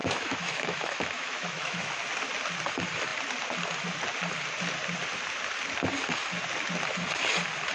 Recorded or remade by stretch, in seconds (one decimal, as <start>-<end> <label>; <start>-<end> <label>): 0.0-2.0 remade; 2.0-7.7 recorded